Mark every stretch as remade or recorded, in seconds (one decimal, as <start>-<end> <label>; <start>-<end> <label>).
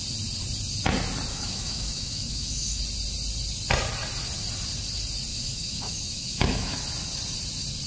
0.0-1.3 recorded; 1.3-2.8 remade; 2.8-5.3 recorded; 5.3-6.8 remade; 6.8-7.9 recorded